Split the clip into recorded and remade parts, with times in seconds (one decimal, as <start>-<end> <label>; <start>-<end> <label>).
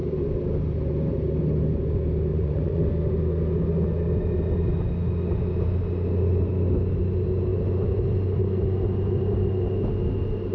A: 0.0-2.3 recorded; 2.3-2.8 remade; 2.8-10.5 recorded